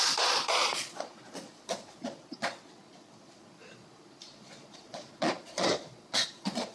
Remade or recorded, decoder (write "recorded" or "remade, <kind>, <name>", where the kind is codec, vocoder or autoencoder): remade, vocoder, Vocos